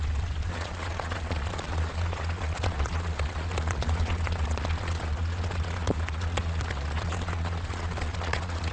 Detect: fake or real fake